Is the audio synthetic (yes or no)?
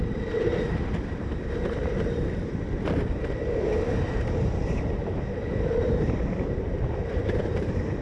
yes